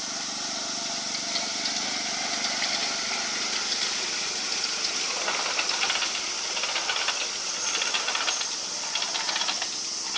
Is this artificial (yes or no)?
no